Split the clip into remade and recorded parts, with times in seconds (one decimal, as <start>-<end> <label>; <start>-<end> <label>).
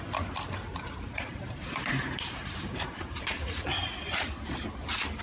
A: 0.0-0.7 recorded; 0.7-3.8 remade; 3.8-5.2 recorded